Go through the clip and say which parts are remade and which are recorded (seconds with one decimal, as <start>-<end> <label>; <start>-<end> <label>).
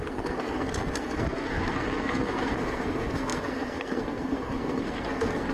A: 0.0-5.5 remade